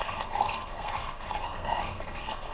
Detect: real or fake fake